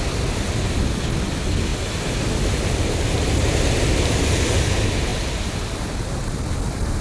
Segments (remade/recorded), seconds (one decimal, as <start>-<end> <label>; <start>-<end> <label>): 0.0-7.0 recorded